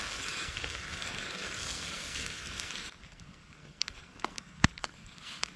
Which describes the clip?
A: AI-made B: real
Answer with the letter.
A